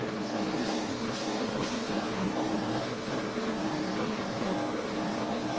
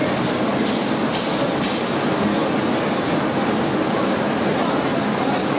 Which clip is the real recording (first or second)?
second